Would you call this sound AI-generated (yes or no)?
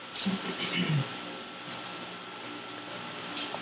no